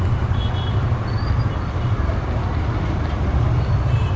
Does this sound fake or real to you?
real